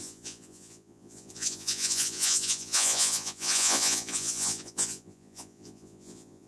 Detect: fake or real fake